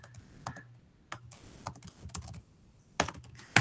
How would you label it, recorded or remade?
recorded